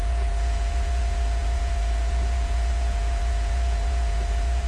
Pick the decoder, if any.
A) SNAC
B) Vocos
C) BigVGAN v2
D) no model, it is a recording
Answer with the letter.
B